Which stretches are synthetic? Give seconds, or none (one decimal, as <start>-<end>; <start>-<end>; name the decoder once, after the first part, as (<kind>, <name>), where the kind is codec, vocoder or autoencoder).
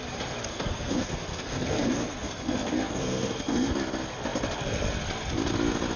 0.5-3.7 (codec, SNAC)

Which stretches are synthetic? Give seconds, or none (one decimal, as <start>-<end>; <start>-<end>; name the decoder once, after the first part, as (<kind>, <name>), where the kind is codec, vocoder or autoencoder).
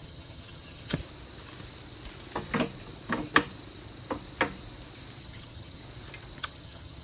0.0-1.0 (vocoder, HiFi-GAN); 5.2-5.8; 6.4-7.0